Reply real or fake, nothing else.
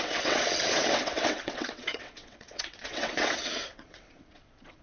fake